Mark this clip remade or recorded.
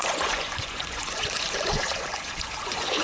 remade